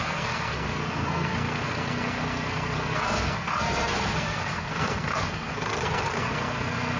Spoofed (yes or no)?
yes